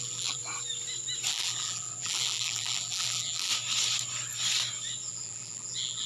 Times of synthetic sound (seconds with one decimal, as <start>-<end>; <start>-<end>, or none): 0.0-0.4; 1.3-3.5; 5.1-6.1

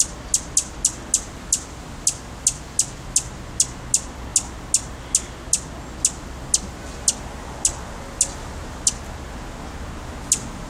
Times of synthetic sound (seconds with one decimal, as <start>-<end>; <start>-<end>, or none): none

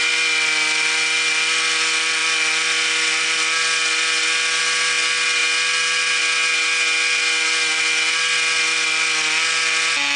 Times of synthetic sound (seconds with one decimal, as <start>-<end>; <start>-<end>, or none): none

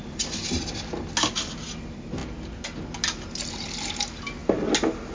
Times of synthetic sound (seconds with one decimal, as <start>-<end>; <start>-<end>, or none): none

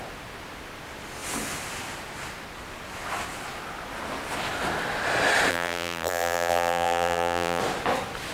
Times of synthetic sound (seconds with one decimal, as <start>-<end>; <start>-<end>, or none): 5.5-7.6

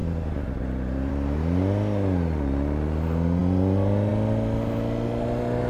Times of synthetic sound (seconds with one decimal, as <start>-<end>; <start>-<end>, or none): none